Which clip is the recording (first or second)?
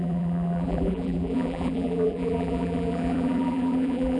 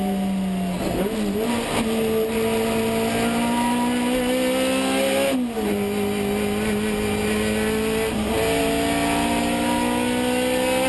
second